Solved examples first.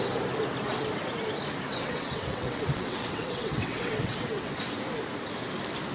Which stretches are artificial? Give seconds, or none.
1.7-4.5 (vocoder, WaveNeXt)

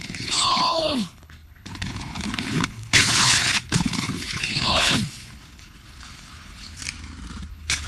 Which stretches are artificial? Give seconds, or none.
0.0-6.8 (codec, HILCodec); 7.5-7.9

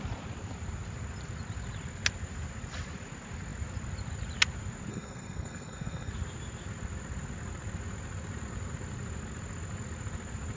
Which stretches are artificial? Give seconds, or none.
4.9-6.1 (codec, SNAC)

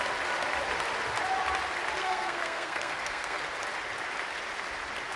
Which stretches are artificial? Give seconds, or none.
2.0-3.4 (codec, SNAC)

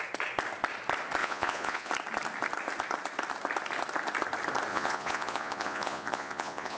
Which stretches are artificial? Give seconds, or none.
1.2-1.9 (vocoder, Vocos); 4.7-6.8

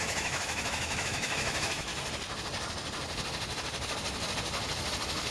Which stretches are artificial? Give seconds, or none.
0.0-1.9 (autoencoder, DAC-VAE)